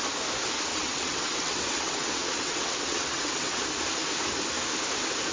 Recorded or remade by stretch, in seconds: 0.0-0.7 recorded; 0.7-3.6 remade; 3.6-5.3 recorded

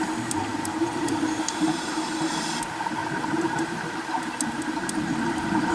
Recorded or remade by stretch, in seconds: 0.0-0.5 recorded; 0.5-1.9 remade; 1.9-3.0 recorded; 3.0-3.9 remade; 3.9-5.7 recorded

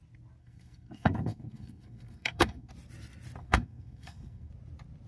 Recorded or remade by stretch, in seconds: 0.0-0.4 recorded; 0.4-2.7 remade; 2.7-3.4 recorded; 3.4-4.5 remade; 4.5-5.1 recorded

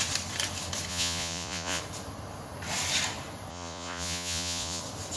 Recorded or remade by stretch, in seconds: 0.0-0.9 recorded; 0.9-1.8 remade; 1.8-3.5 recorded; 3.5-4.8 remade; 4.8-5.2 recorded

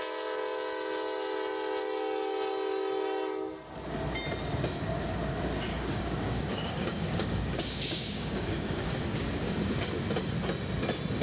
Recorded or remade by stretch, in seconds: 0.0-5.7 recorded; 5.7-9.9 remade; 9.9-11.2 recorded